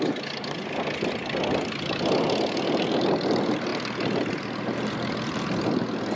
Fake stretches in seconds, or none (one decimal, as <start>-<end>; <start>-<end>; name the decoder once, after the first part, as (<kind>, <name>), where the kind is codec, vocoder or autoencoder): none